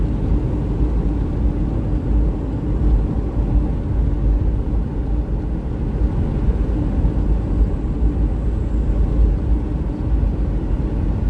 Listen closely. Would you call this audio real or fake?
real